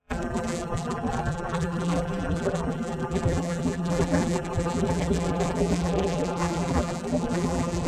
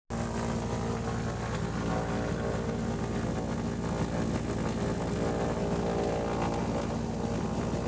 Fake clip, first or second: first